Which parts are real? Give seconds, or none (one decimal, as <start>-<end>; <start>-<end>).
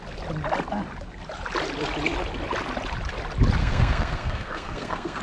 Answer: 0.0-3.6